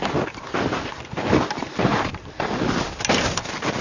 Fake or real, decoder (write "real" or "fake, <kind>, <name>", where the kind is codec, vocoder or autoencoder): real